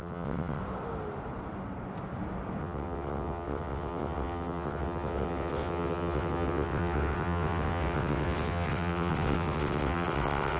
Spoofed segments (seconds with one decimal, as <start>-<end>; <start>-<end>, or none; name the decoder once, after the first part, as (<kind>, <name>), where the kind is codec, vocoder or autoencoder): 0.0-0.6 (vocoder, WaveNeXt); 2.6-10.6